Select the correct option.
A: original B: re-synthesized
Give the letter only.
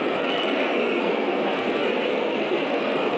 B